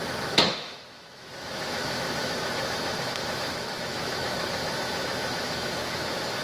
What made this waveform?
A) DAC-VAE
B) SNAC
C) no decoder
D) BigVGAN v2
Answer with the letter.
A